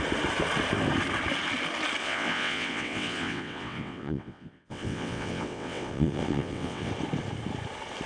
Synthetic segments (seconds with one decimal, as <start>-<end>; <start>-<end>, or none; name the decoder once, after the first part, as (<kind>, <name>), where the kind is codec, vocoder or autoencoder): 2.0-6.9 (vocoder, WaveNeXt)